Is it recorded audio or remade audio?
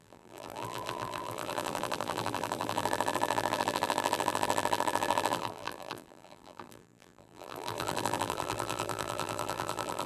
remade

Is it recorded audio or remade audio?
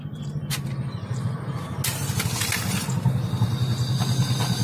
recorded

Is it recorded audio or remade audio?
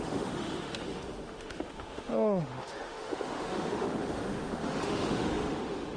remade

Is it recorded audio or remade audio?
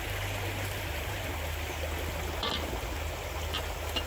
recorded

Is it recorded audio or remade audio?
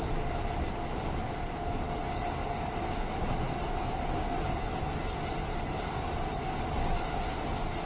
recorded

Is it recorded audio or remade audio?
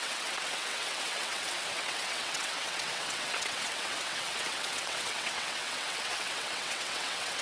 remade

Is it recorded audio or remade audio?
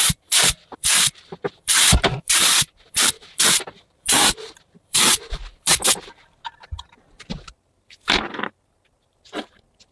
remade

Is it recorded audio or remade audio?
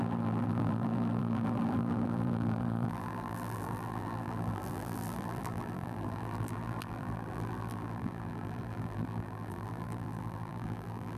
remade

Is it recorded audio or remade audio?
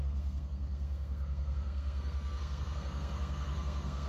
remade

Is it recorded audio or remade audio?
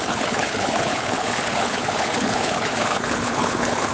remade